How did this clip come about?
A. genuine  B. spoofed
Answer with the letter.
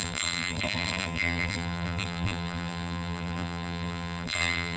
B